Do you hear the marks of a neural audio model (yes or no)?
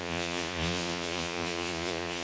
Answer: yes